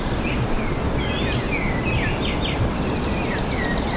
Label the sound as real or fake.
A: real